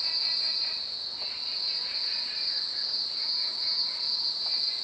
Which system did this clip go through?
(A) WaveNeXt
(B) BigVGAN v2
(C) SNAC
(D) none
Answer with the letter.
D